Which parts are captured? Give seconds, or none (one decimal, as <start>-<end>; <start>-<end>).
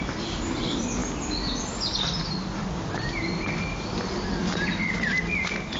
0.0-5.8